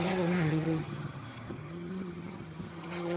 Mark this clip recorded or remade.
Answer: remade